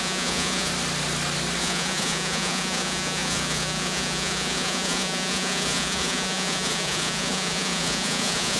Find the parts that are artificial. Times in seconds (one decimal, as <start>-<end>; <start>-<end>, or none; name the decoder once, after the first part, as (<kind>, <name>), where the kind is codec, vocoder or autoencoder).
0.0-0.7 (vocoder, Vocos); 1.6-8.6